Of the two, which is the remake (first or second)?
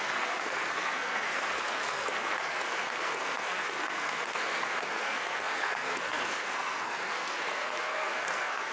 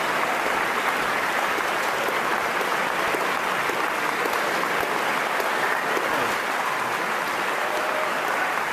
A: first